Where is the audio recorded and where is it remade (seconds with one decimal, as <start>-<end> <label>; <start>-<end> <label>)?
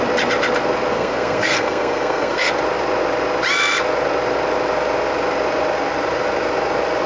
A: 0.0-0.9 recorded; 0.9-2.5 remade; 2.5-7.1 recorded